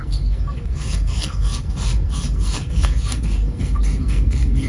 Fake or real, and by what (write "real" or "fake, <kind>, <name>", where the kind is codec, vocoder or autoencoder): fake, codec, SNAC